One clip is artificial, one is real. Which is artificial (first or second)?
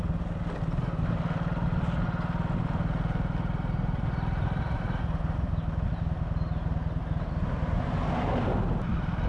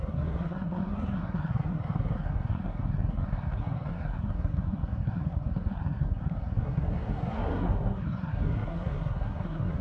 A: second